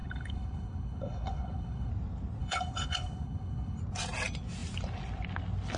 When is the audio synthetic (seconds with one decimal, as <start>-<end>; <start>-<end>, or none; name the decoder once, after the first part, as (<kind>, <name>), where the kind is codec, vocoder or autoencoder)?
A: 0.0-1.9 (codec, HILCodec); 2.4-3.8